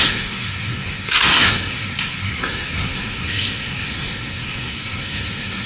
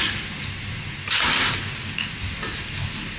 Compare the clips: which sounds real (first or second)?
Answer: second